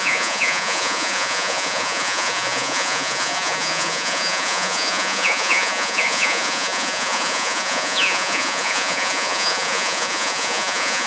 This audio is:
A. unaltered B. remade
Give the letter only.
B